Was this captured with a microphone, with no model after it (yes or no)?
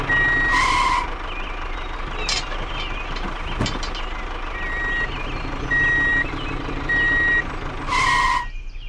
yes